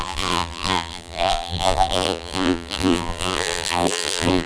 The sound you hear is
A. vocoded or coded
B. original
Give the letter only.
A